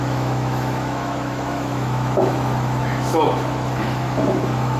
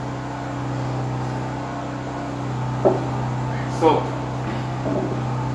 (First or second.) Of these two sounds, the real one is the second